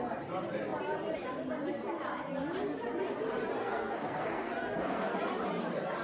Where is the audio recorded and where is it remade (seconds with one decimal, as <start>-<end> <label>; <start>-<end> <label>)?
0.0-3.6 recorded; 3.6-5.2 remade; 5.2-6.0 recorded